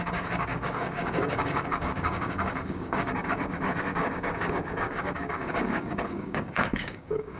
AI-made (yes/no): yes